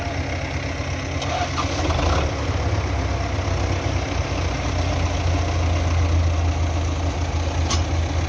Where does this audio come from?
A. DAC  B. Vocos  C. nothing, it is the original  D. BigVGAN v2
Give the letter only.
C